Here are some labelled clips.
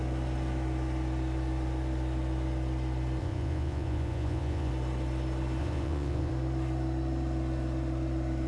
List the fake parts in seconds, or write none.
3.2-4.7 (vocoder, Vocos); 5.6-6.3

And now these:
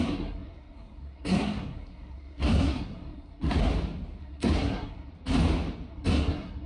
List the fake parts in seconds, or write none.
0.0-3.7 (codec, SNAC); 4.2-5.1; 5.9-6.7

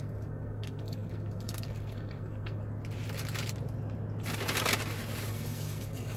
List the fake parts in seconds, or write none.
0.0-2.6 (codec, SNAC); 5.3-6.2

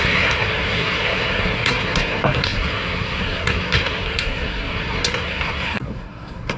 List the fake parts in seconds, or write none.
0.0-6.6 (codec, SNAC)

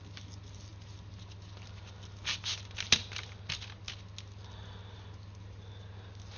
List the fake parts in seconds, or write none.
none

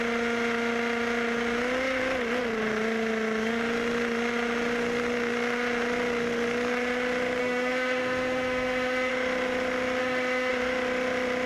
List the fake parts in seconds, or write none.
7.4-9.1 (autoencoder, DAC-VAE); 10.0-10.5

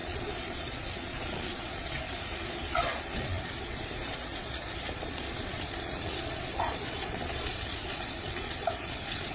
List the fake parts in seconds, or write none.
0.0-9.3 (vocoder, Vocos)

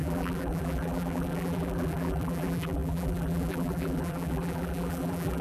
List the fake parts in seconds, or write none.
0.0-5.4 (vocoder, BigVGAN v2)